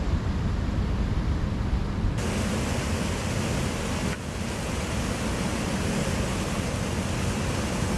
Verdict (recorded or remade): recorded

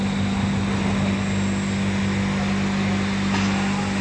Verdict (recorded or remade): recorded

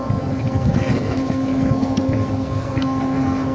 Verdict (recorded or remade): remade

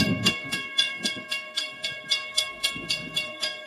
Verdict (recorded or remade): remade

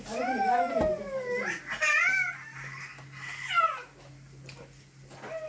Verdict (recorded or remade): recorded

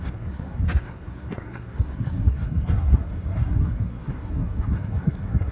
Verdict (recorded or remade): remade